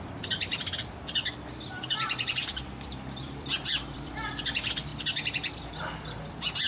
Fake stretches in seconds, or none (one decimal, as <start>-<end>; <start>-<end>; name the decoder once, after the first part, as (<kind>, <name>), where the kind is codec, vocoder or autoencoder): 0.0-4.9 (vocoder, BigVGAN v2); 5.5-6.7